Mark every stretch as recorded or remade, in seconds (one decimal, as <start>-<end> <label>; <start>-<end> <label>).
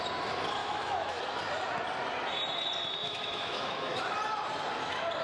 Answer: 0.0-0.6 recorded; 0.6-1.2 remade; 1.2-3.0 recorded; 3.0-4.0 remade; 4.0-5.2 recorded